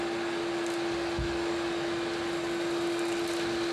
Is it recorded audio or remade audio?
recorded